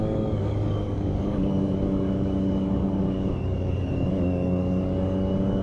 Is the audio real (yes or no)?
no